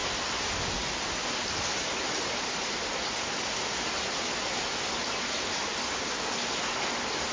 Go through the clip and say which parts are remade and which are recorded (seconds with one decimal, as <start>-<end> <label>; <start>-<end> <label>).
0.0-7.3 recorded